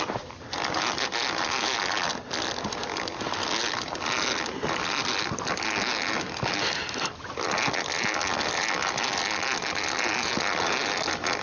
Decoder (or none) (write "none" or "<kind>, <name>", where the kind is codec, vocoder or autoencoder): none